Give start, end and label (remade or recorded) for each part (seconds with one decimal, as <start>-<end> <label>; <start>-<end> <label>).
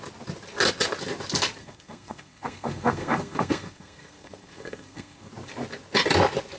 0.0-1.6 recorded; 1.6-5.3 remade; 5.3-6.6 recorded